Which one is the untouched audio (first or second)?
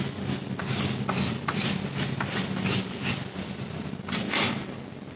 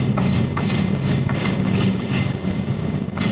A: first